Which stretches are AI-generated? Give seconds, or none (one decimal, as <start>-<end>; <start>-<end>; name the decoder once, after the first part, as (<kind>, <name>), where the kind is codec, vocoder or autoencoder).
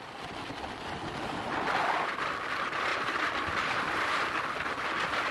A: 2.9-4.3 (vocoder, BigVGAN v2)